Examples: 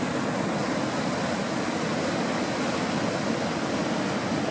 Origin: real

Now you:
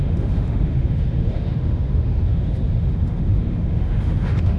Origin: fake